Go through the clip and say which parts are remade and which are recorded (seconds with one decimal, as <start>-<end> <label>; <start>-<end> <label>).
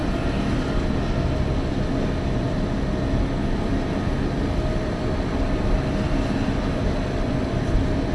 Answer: 0.0-8.1 recorded